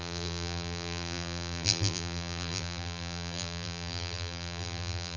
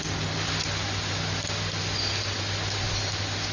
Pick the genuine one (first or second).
second